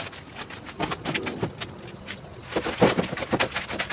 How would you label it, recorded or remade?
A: recorded